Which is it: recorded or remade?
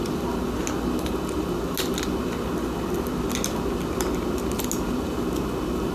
recorded